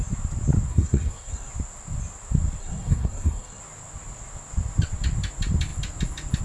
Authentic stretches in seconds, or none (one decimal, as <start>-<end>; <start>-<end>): 0.0-0.7; 1.5-2.6; 3.6-6.4